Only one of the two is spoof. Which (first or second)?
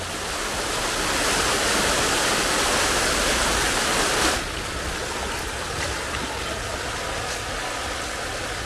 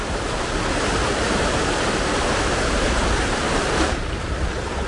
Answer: second